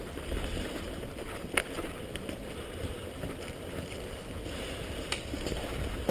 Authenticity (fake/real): real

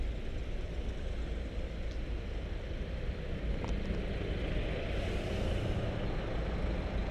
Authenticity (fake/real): real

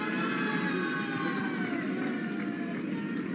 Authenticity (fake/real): real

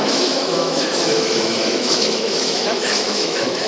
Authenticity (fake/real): fake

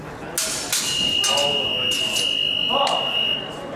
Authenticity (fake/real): real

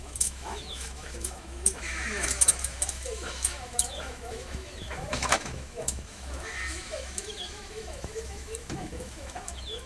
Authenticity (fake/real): fake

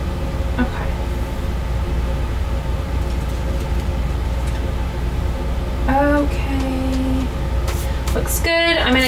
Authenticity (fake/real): real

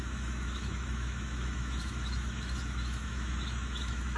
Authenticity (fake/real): fake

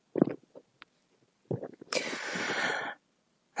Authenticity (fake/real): real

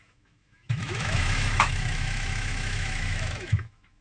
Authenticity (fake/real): fake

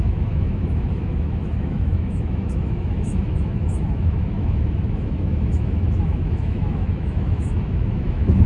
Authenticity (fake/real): fake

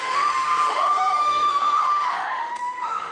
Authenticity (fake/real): fake